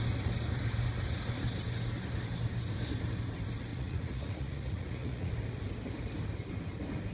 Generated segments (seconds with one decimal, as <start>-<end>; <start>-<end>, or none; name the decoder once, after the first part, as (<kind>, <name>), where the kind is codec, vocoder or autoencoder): 3.7-5.3 (vocoder, Vocos)